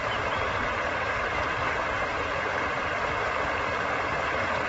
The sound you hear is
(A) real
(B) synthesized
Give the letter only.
B